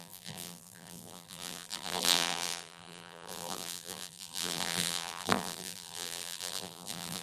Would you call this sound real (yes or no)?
no